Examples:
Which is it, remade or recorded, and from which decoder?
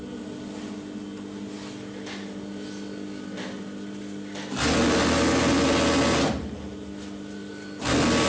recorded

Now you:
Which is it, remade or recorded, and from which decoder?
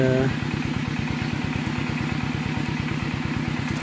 recorded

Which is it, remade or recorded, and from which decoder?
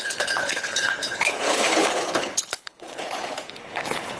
remade, codec, HILCodec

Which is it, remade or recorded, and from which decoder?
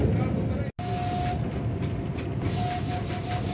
recorded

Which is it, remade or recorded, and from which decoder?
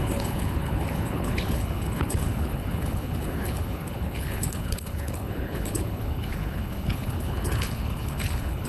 remade, codec, HILCodec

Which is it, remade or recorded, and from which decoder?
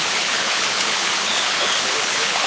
remade, codec, HILCodec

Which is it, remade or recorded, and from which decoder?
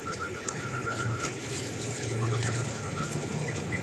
remade, codec, HILCodec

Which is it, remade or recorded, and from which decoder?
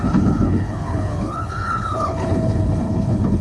remade, codec, HILCodec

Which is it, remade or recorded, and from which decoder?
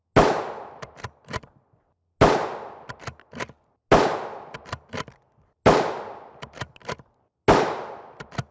recorded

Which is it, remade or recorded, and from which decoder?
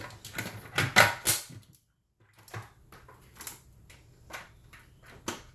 recorded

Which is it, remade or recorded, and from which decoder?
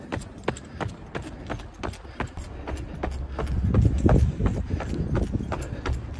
recorded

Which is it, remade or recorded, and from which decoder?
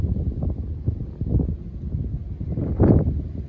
recorded